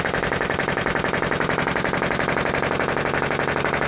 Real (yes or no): yes